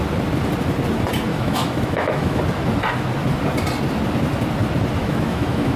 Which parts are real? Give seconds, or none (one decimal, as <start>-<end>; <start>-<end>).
0.0-1.3; 2.4-5.0